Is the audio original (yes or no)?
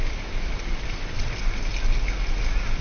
yes